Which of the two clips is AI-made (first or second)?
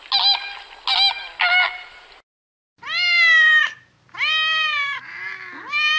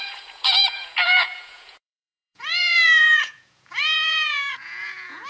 second